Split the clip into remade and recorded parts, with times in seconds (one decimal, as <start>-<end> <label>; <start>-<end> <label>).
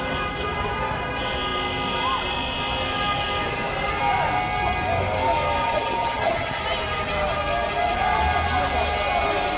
0.0-5.6 recorded; 5.6-6.6 remade; 6.6-9.6 recorded